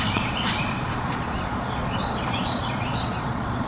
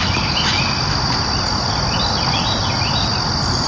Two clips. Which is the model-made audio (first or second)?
first